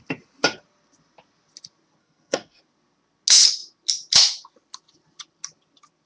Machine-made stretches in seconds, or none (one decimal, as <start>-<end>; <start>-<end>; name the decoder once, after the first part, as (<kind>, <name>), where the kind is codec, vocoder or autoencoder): 2.0-2.6 (codec, SNAC)